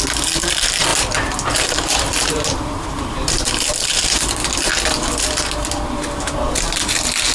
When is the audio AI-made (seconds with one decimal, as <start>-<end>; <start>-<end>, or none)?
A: 0.9-4.9